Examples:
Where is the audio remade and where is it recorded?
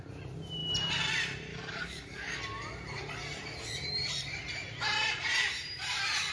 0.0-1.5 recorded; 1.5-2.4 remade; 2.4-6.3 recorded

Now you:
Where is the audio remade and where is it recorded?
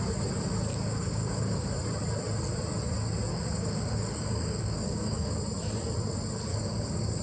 0.0-0.7 recorded; 0.7-1.7 remade; 1.7-3.3 recorded; 3.3-5.4 remade; 5.4-6.5 recorded; 6.5-7.2 remade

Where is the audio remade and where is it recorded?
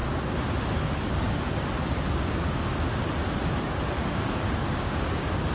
0.0-2.1 recorded; 2.1-2.7 remade; 2.7-3.6 recorded; 3.6-5.5 remade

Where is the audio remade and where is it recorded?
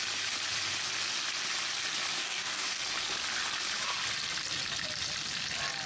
0.0-2.2 recorded; 2.2-2.8 remade; 2.8-5.9 recorded